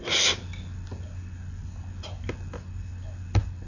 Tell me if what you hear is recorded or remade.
recorded